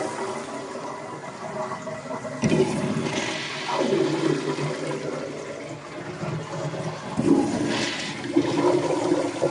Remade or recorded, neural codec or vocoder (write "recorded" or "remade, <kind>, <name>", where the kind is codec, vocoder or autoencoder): recorded